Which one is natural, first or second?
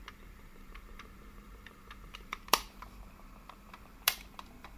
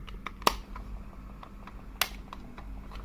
second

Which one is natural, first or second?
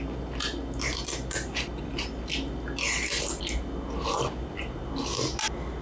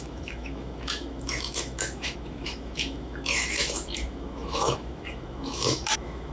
first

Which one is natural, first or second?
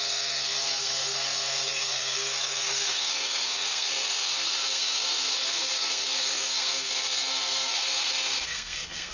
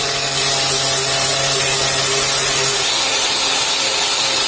second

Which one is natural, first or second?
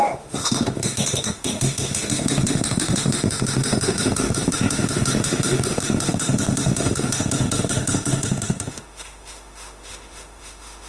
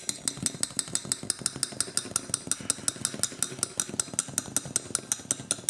second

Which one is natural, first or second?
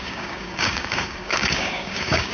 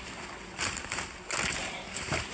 second